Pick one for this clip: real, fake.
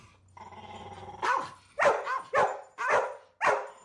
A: real